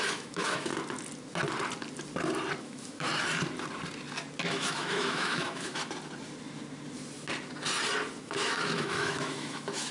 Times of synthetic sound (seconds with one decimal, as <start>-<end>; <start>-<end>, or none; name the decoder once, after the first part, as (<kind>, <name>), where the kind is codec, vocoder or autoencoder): 0.0-0.7 (autoencoder, DAC-VAE); 2.6-3.1; 4.5-5.8; 8.2-9.9